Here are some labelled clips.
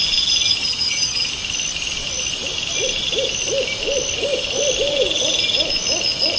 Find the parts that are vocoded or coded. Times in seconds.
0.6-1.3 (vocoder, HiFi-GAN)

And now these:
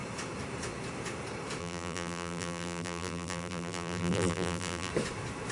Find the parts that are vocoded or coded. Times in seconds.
1.6-4.9 (vocoder, BigVGAN v2)

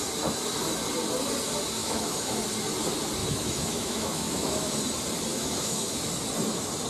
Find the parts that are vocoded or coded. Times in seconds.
1.8-2.4 (autoencoder, DAC-VAE); 3.2-4.7; 5.3-6.0

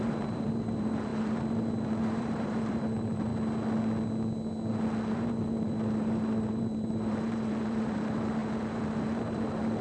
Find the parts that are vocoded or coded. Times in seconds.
0.0-3.3 (vocoder, BigVGAN v2); 5.1-9.8